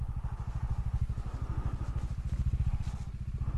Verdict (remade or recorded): recorded